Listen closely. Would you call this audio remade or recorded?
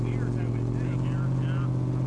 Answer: recorded